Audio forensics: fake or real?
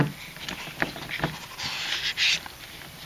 real